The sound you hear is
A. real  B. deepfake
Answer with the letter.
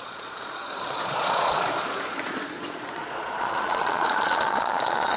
B